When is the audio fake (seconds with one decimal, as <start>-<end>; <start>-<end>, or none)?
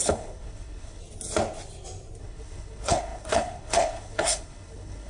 0.0-1.0; 2.2-5.1